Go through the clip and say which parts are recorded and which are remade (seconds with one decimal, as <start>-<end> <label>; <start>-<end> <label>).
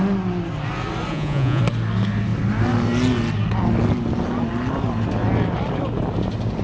0.0-1.1 recorded; 1.1-1.6 remade; 1.6-6.6 recorded